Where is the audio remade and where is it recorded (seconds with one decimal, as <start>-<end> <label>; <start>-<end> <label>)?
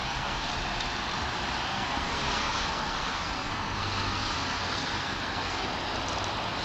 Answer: 0.0-0.5 remade; 0.5-1.7 recorded; 1.7-5.7 remade; 5.7-6.6 recorded